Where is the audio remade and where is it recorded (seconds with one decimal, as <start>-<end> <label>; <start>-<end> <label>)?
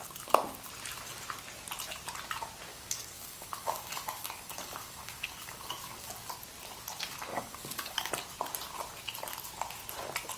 0.0-2.7 recorded; 2.7-6.1 remade; 6.1-7.3 recorded; 7.3-8.1 remade; 8.1-10.4 recorded